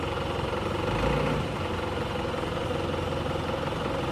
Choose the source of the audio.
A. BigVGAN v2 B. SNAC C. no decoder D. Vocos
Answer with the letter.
C